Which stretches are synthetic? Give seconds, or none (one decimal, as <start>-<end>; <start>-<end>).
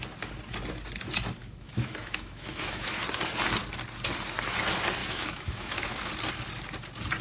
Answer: 1.4-3.0; 5.0-6.1